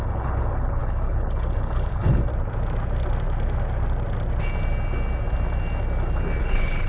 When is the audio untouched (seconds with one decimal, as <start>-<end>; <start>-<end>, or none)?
2.3-6.4